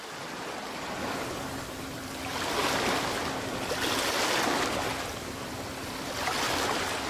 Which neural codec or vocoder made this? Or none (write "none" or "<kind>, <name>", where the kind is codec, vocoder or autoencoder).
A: none